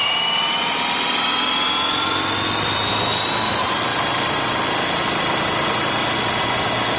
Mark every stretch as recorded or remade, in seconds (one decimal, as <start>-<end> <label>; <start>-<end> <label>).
0.0-7.0 recorded